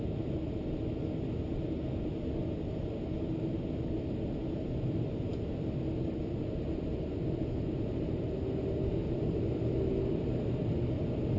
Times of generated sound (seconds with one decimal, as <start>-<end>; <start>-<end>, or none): 9.0-10.7